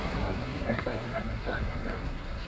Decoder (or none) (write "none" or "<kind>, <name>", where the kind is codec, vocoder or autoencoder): codec, SNAC